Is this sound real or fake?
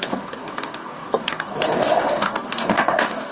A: fake